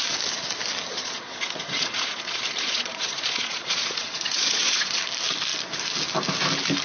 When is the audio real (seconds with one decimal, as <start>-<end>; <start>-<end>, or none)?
0.0-0.9; 5.0-6.8